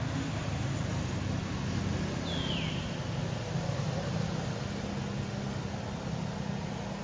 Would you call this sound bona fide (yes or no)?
yes